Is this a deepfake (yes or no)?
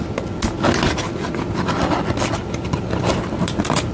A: no